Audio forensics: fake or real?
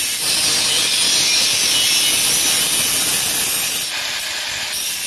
real